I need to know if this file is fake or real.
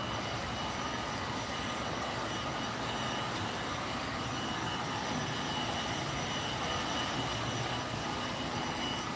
real